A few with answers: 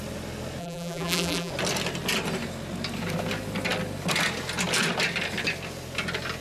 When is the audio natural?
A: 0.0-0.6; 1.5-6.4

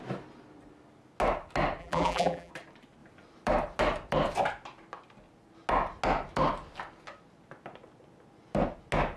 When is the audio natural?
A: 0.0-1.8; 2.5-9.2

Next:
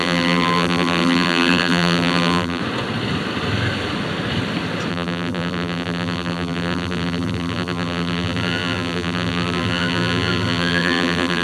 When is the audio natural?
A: 2.6-4.9

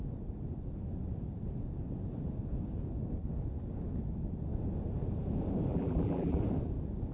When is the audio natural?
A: 0.0-5.7; 6.4-7.1